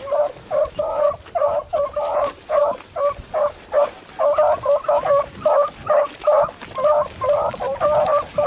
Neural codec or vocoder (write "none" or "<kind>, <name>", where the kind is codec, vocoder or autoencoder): none